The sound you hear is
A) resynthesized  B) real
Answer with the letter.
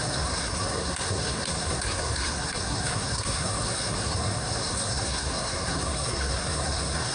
A